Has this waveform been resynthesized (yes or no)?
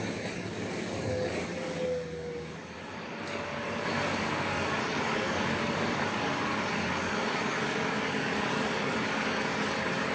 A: yes